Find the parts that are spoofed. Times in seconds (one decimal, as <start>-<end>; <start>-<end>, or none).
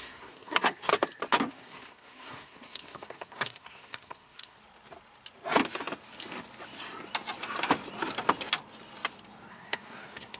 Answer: 0.0-0.9; 1.5-4.6; 9.5-10.4